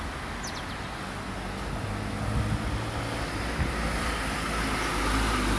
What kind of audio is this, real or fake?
real